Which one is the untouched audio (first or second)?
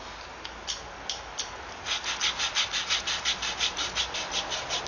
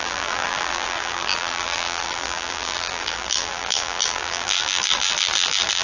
first